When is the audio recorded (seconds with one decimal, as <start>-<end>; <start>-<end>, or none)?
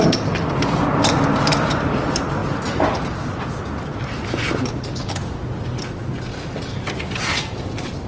2.4-4.4; 5.2-7.3